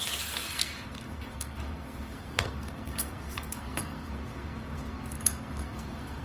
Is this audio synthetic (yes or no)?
yes